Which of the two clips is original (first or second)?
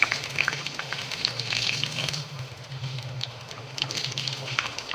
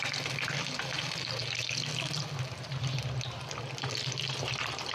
second